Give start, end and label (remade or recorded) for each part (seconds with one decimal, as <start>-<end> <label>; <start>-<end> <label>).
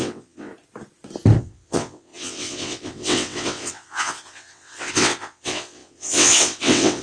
0.0-0.5 remade; 0.5-1.4 recorded; 1.4-7.0 remade